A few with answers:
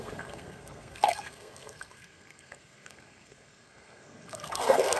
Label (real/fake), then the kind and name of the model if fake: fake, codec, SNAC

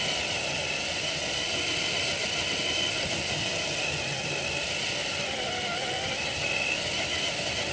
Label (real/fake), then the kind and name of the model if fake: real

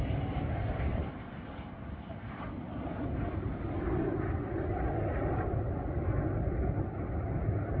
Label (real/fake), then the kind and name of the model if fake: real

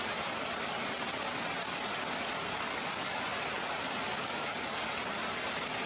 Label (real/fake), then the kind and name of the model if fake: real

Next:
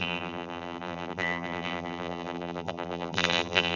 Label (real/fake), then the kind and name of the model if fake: fake, vocoder, BigVGAN v2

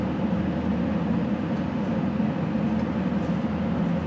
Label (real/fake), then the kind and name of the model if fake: real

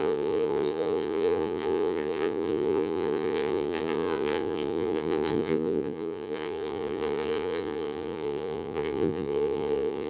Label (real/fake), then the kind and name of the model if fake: fake, vocoder, Vocos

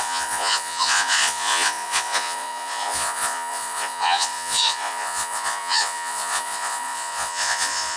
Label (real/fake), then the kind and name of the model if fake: fake, vocoder, Vocos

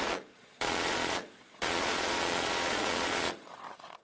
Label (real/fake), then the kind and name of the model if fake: fake, vocoder, Vocos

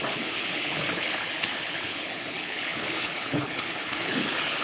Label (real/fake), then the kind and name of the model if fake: fake, codec, HILCodec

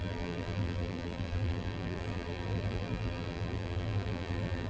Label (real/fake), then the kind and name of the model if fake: fake, vocoder, BigVGAN v2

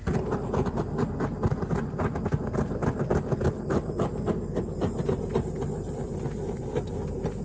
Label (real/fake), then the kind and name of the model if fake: real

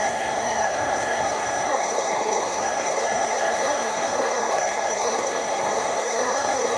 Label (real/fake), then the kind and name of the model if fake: fake, codec, SNAC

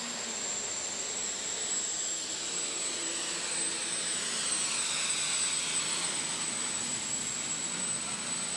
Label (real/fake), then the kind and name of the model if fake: real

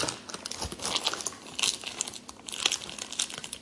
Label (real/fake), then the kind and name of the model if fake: real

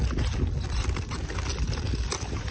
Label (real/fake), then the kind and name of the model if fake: real